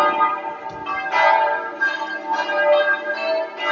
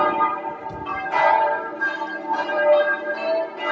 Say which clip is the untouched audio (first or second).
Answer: first